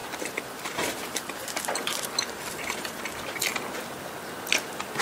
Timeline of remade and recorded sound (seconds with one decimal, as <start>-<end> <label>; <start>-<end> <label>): 0.0-3.0 remade; 3.0-5.0 recorded